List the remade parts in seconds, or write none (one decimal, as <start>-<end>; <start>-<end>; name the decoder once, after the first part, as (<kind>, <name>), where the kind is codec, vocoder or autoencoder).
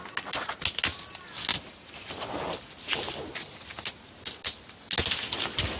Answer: 1.5-2.3 (vocoder, BigVGAN v2)